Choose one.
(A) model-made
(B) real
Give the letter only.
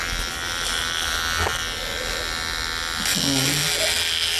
B